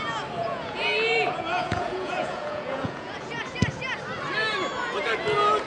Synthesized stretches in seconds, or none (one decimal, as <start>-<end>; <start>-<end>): 0.4-3.5